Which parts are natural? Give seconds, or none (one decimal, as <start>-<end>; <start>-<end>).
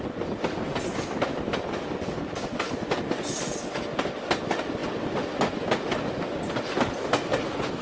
0.0-7.8